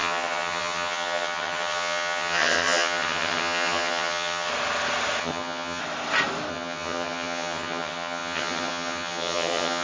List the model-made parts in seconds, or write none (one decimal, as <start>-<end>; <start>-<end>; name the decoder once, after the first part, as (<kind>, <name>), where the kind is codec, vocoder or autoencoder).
0.0-4.5 (vocoder, HiFi-GAN); 5.2-5.8; 6.5-9.8

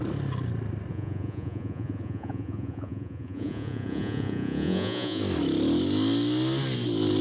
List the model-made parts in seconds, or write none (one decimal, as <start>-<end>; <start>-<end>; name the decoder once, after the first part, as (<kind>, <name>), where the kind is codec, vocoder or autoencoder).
0.9-5.2 (vocoder, Vocos)

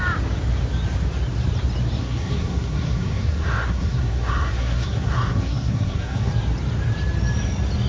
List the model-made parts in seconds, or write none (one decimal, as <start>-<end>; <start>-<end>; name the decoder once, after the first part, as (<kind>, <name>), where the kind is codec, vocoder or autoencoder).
2.0-6.3 (codec, SNAC)

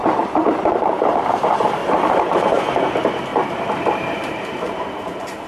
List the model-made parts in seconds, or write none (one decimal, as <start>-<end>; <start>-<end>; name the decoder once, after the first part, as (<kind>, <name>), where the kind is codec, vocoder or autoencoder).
0.0-1.3 (vocoder, BigVGAN v2); 1.8-2.6; 3.3-5.5

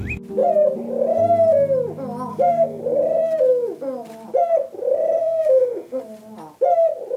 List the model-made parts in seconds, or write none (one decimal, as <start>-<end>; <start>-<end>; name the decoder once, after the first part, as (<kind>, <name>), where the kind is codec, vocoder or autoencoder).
2.3-2.8 (codec, SNAC); 5.2-6.0

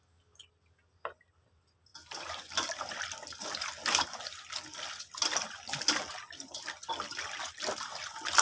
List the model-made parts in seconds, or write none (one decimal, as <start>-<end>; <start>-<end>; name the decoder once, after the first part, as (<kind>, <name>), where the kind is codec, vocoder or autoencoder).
none

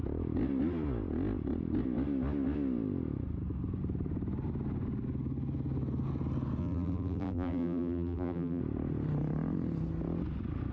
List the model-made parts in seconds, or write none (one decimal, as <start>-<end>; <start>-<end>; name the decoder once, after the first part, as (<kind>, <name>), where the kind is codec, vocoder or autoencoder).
6.6-8.6 (vocoder, BigVGAN v2)